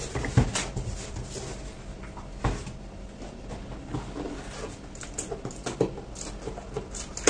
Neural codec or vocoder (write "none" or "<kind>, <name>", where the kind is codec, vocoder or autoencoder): none